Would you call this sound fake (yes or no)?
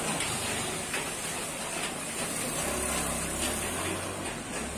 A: no